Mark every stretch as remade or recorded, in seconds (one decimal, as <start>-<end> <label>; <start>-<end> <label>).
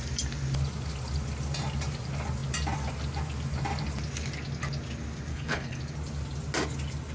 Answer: 0.0-5.3 recorded; 5.3-5.8 remade; 5.8-7.1 recorded